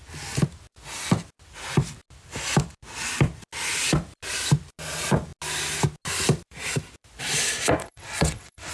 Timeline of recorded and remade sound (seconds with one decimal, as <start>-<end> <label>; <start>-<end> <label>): 0.0-7.8 recorded; 7.8-8.7 remade